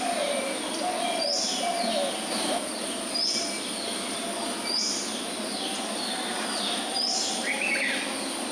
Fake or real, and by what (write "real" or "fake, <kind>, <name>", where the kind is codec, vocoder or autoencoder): real